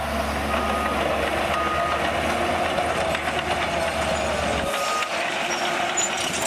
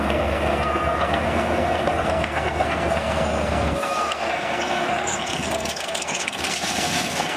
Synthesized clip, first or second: second